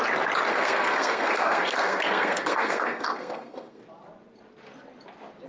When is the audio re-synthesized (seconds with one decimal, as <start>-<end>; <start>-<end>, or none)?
0.5-3.8